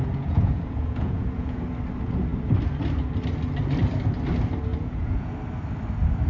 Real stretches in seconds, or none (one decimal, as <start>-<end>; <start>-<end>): 1.6-4.7; 5.3-6.3